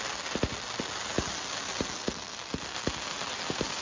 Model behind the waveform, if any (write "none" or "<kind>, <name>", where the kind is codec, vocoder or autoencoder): none